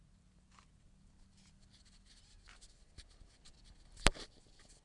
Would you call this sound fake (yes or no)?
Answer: no